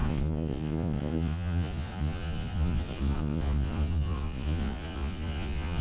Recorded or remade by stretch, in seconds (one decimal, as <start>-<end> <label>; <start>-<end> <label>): 0.0-5.8 remade